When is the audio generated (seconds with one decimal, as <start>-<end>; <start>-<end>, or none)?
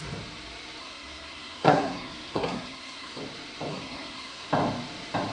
0.8-3.2; 3.7-4.5